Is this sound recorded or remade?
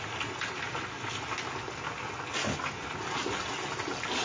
recorded